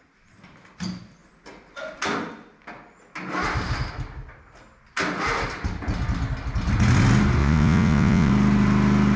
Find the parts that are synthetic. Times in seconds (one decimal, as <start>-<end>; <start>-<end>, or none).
7.4-8.3